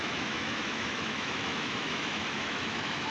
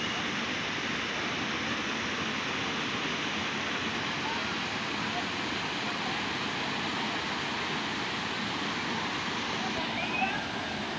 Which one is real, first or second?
second